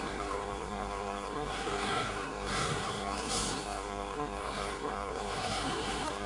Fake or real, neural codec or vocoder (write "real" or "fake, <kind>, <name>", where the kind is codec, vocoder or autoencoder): fake, codec, SNAC